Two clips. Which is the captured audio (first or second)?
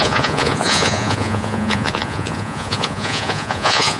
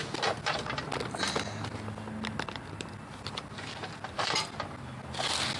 second